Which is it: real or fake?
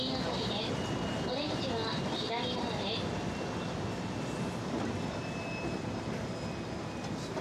real